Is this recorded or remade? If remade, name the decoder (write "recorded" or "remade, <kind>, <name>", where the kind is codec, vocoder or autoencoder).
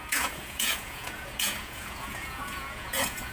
remade, vocoder, Vocos